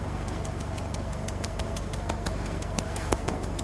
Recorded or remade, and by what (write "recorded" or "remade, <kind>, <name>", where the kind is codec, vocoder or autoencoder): remade, codec, SNAC